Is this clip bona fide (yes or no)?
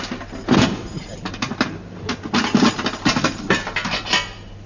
yes